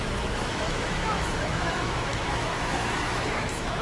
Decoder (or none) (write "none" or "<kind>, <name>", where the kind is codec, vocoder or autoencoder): autoencoder, DAC-VAE